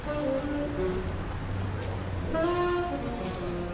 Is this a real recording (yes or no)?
yes